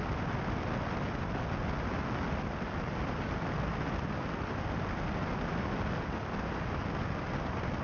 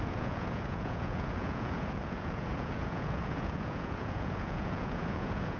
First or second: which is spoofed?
second